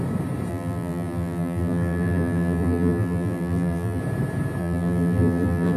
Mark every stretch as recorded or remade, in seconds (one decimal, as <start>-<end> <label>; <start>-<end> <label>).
0.0-0.5 recorded; 0.5-4.0 remade; 4.0-4.6 recorded; 4.6-5.8 remade